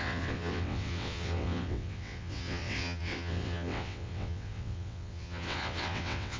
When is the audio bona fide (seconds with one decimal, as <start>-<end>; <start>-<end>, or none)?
none